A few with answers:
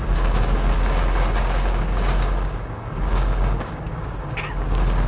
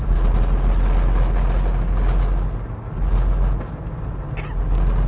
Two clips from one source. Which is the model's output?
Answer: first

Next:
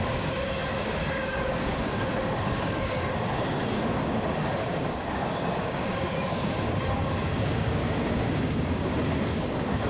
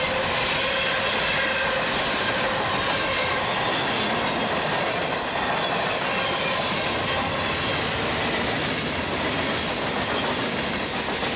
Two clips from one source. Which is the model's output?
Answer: first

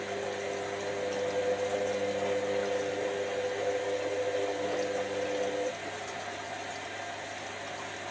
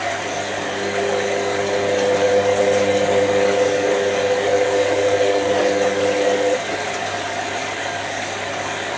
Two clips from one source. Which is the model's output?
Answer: second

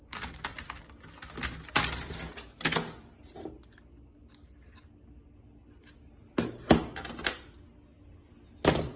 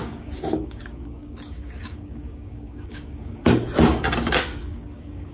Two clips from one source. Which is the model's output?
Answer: second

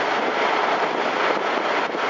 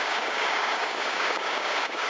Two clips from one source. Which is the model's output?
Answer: second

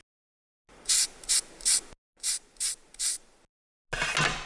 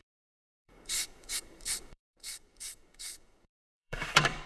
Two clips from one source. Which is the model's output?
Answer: second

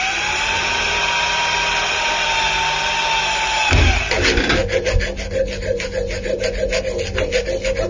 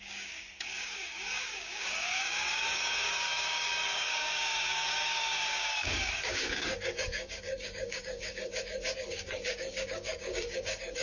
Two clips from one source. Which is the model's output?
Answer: second